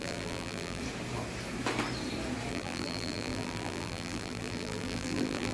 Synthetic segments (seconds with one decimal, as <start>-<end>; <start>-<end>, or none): 0.0-0.8; 2.5-5.5